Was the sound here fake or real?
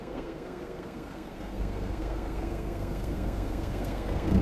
fake